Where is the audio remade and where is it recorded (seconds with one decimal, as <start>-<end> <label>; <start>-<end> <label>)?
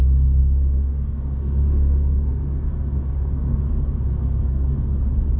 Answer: 0.0-0.4 recorded; 0.4-3.6 remade; 3.6-4.1 recorded; 4.1-4.9 remade; 4.9-5.4 recorded